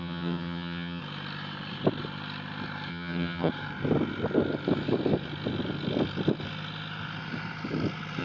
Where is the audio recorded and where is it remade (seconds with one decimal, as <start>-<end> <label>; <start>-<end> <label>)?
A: 0.0-1.0 remade; 1.0-2.9 recorded; 2.9-3.5 remade; 3.5-8.2 recorded